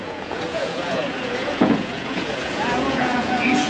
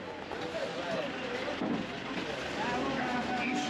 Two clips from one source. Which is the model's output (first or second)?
first